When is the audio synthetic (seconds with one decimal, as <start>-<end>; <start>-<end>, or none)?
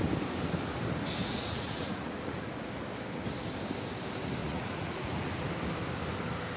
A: 1.2-2.5; 4.4-5.3